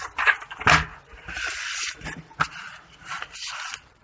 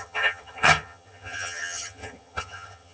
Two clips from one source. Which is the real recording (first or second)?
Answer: first